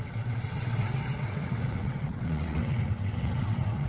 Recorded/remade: remade